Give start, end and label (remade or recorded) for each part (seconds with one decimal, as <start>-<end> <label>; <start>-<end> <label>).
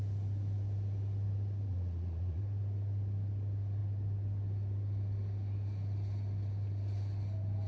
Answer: 0.0-1.7 recorded; 1.7-2.4 remade; 2.4-7.7 recorded